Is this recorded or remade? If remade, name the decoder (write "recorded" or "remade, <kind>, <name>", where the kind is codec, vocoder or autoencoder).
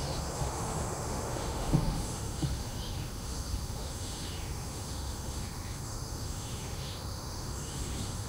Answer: remade, autoencoder, DAC-VAE